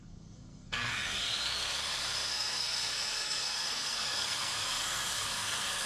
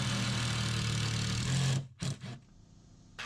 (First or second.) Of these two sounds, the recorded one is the second